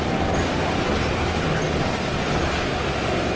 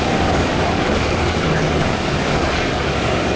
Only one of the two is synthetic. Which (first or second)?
second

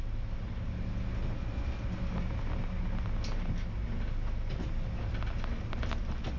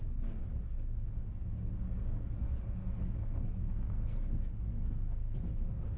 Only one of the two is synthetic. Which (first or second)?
second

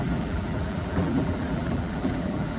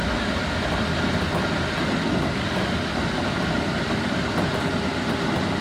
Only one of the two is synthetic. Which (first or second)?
first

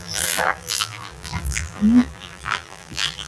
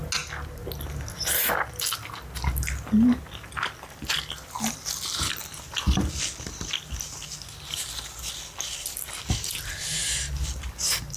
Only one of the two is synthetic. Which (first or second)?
first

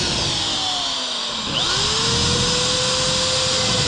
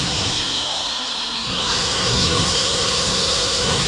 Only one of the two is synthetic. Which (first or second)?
second